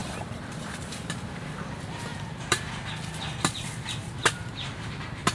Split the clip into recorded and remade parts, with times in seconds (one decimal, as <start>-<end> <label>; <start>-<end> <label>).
0.0-1.7 remade; 1.7-2.1 recorded; 2.1-2.7 remade; 2.7-4.0 recorded; 4.0-5.3 remade